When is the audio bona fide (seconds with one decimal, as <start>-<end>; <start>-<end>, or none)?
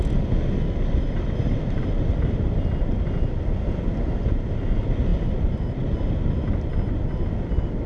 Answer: 0.0-7.9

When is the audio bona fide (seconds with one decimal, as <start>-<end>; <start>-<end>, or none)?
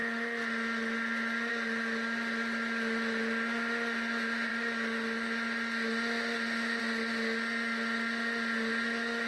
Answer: 0.0-9.3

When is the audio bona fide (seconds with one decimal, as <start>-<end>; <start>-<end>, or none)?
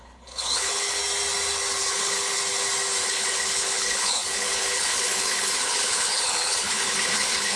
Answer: 1.0-1.8; 2.4-3.0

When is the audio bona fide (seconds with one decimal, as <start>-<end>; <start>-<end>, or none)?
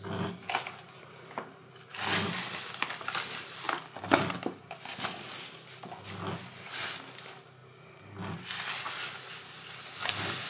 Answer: 0.0-10.5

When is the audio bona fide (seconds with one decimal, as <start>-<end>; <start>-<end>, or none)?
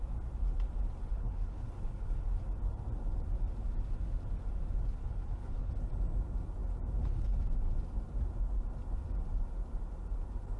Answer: 0.0-1.1; 2.2-5.0; 5.7-10.6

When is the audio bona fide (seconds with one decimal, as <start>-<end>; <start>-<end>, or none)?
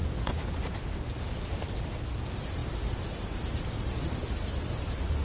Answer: 0.0-5.2